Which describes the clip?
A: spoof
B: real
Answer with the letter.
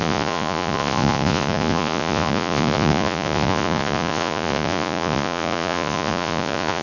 A